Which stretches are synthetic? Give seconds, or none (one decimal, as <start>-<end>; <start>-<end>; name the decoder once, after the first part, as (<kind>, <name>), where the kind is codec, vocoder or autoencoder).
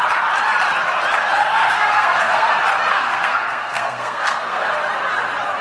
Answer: 1.4-2.5 (codec, SNAC); 2.9-4.7